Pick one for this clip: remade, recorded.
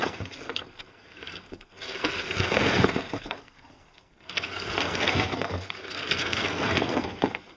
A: remade